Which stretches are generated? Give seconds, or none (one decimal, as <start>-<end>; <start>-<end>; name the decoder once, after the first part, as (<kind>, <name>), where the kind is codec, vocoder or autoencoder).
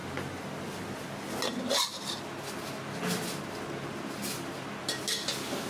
none